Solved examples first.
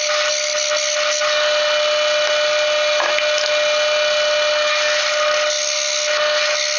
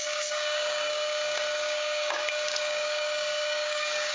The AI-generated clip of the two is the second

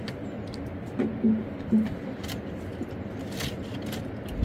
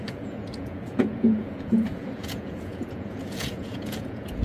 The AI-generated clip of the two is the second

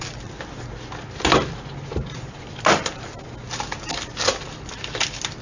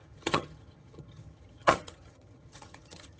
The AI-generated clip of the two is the second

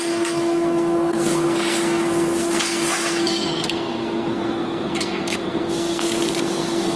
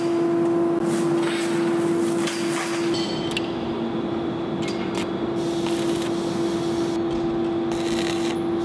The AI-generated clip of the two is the first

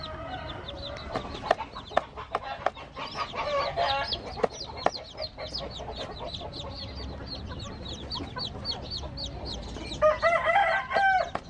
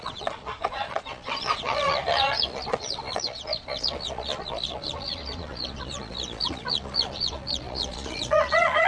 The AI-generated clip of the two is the second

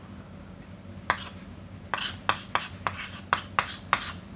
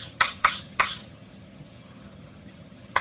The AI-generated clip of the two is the second